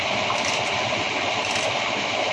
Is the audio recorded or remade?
remade